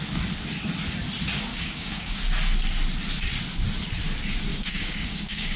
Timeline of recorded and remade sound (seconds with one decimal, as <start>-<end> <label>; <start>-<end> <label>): 0.0-1.5 recorded; 1.5-2.2 remade; 2.2-4.5 recorded; 4.5-5.6 remade